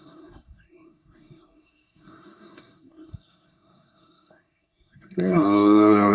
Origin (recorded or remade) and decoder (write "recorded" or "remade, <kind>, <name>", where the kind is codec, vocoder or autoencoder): remade, codec, SNAC